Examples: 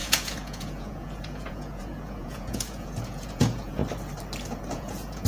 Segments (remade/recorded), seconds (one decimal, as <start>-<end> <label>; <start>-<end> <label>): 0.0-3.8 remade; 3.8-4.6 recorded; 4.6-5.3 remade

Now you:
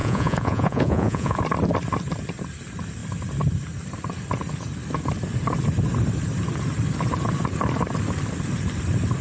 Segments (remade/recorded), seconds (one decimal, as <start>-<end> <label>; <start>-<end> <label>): 0.0-1.4 remade; 1.4-9.2 recorded

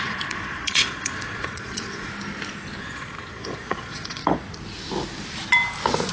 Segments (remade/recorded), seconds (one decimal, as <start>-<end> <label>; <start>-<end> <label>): 0.0-2.1 remade; 2.1-2.8 recorded; 2.8-4.2 remade; 4.2-6.1 recorded

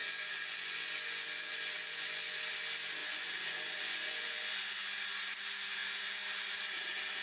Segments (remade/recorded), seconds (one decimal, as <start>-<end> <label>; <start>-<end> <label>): 0.0-2.4 remade; 2.4-3.0 recorded; 3.0-4.5 remade; 4.5-7.2 recorded